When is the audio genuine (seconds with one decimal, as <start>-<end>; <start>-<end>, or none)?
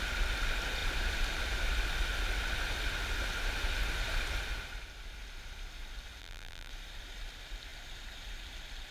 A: 0.0-6.2; 6.7-8.9